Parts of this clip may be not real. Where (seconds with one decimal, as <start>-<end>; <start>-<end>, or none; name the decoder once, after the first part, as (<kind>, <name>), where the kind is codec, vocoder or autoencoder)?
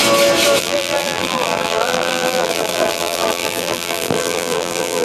0.6-5.0 (vocoder, BigVGAN v2)